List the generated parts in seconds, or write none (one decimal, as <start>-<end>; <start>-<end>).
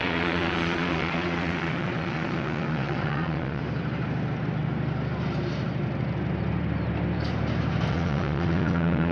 0.0-3.6; 7.9-9.1